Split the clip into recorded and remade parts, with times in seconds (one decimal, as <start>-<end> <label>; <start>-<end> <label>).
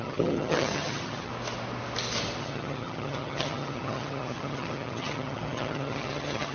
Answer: 0.0-1.3 remade; 1.3-2.4 recorded; 2.4-6.5 remade